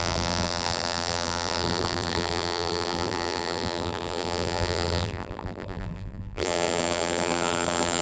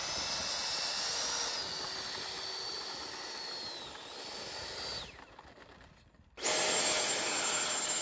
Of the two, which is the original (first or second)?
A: second